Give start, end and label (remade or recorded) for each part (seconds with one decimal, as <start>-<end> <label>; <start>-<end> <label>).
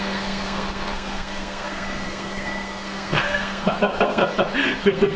0.0-4.2 remade; 4.2-4.8 recorded; 4.8-5.2 remade